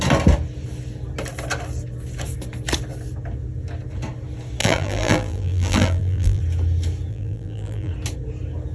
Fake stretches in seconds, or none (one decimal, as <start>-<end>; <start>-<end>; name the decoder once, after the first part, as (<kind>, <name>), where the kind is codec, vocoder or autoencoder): 4.6-6.4 (vocoder, BigVGAN v2); 7.1-7.9